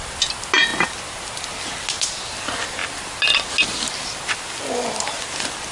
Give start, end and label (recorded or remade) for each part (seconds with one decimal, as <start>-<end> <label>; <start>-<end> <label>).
0.0-5.7 recorded